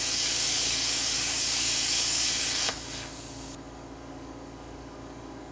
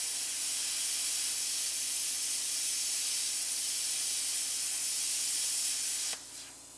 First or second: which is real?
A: second